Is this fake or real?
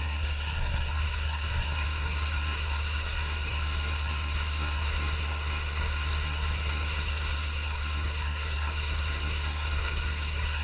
fake